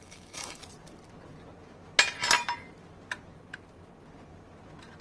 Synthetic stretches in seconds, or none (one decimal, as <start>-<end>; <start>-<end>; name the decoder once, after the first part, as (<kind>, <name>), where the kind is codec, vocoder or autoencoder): 0.0-0.6 (autoencoder, DAC-VAE)

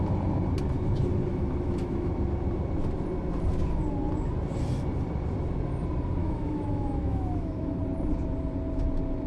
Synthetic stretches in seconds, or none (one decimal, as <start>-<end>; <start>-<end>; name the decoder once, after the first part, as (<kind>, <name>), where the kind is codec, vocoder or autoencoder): 1.3-2.1 (autoencoder, DAC-VAE); 6.2-7.8

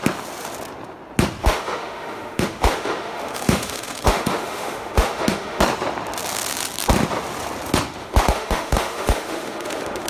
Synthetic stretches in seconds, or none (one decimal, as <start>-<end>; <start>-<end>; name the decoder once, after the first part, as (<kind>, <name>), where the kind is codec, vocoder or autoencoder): 1.4-5.6 (autoencoder, DAC-VAE); 8.0-10.1

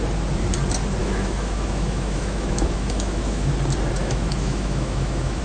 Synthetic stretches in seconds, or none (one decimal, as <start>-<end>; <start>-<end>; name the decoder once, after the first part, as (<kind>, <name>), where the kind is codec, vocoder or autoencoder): 1.0-3.5 (autoencoder, DAC-VAE); 4.0-5.4

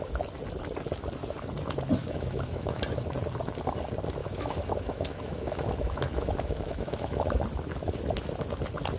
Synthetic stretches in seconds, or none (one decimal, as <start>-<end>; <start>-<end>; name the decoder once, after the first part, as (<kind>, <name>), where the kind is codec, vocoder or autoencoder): 2.0-2.8 (autoencoder, DAC-VAE); 4.2-7.4

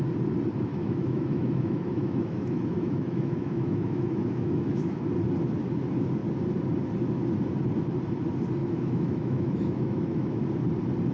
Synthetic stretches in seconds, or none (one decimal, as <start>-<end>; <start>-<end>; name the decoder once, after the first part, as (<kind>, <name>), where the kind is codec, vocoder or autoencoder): 0.7-5.0 (autoencoder, DAC-VAE); 8.6-10.4